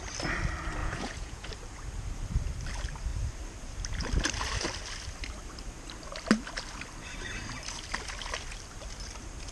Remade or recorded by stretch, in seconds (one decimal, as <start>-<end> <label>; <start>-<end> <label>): 0.0-0.8 recorded; 0.8-1.5 remade; 1.5-9.5 recorded